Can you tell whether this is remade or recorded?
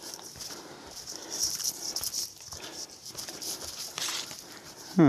remade